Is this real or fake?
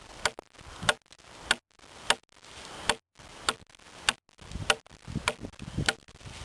real